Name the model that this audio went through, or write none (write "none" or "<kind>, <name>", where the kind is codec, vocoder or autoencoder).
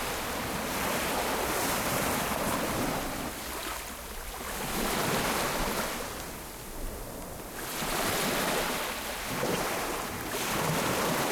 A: none